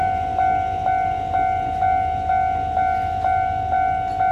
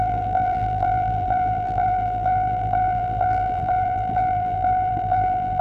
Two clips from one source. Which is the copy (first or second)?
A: second